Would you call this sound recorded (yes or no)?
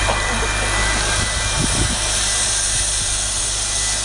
yes